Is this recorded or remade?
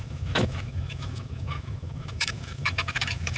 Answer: remade